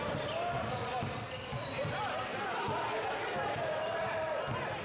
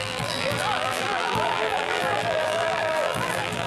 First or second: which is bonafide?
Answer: first